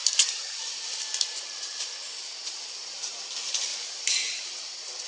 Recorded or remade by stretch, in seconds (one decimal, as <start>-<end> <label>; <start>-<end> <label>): 0.0-2.8 recorded; 2.8-3.3 remade; 3.3-3.7 recorded; 3.7-4.4 remade; 4.4-5.1 recorded